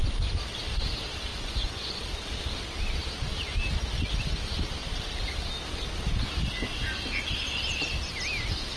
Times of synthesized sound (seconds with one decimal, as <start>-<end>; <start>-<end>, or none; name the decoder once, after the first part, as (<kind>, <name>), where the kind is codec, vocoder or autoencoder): 1.3-2.0 (vocoder, Vocos)